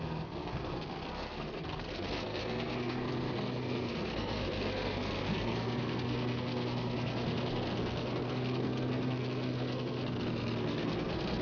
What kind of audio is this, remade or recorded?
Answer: remade